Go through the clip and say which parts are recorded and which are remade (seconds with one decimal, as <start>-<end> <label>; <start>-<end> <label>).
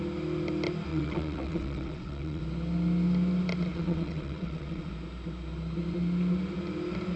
0.0-0.9 recorded; 0.9-2.4 remade; 2.4-3.7 recorded; 3.7-4.9 remade; 4.9-7.2 recorded